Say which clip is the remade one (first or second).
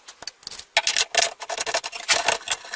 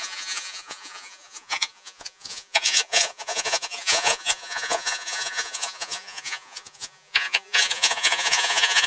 second